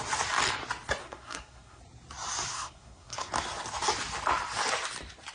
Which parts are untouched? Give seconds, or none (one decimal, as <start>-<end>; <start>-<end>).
0.0-1.0; 1.8-2.5; 3.3-5.3